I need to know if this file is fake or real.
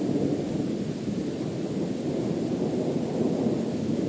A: real